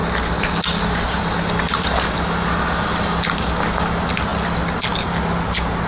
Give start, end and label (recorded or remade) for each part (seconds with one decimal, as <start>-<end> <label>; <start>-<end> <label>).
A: 0.0-5.9 recorded